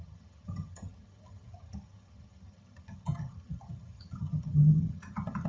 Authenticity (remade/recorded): remade